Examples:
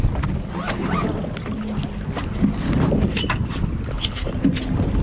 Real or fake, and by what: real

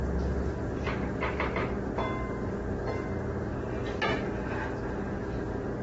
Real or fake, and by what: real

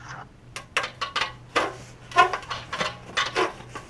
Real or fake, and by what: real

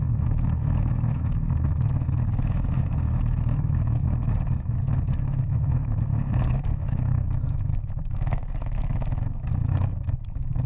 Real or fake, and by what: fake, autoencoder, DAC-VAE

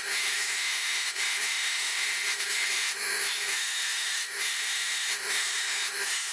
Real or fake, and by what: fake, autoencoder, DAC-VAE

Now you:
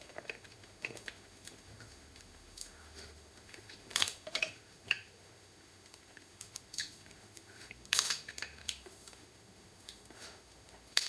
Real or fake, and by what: fake, autoencoder, DAC-VAE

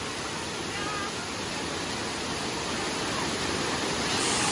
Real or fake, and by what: real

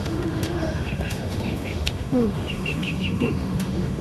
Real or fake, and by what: fake, autoencoder, DAC-VAE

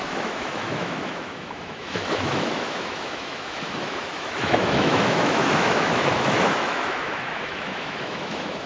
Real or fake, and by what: fake, autoencoder, DAC-VAE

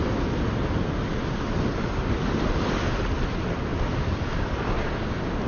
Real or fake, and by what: real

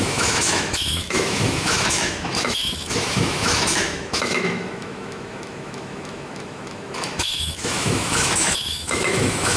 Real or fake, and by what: fake, autoencoder, DAC-VAE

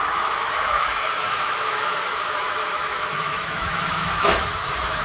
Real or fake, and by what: fake, autoencoder, DAC-VAE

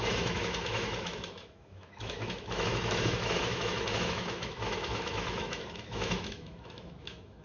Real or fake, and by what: fake, autoencoder, DAC-VAE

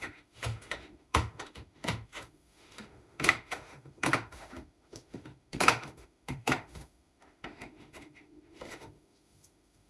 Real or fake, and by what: fake, autoencoder, DAC-VAE